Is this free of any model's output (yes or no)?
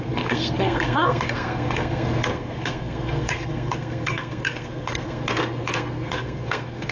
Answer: no